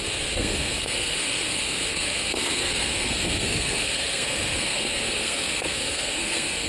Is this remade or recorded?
remade